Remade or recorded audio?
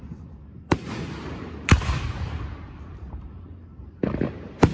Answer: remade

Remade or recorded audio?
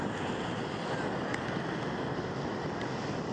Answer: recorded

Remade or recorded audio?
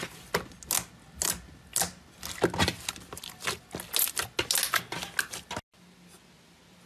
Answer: recorded